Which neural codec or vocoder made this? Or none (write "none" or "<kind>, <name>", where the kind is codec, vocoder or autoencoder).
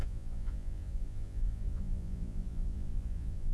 vocoder, Vocos